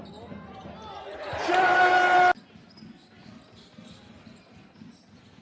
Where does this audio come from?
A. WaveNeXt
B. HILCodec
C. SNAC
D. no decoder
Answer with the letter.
D